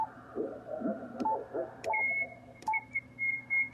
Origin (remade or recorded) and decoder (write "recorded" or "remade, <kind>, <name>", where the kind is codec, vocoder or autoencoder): remade, vocoder, BigVGAN v2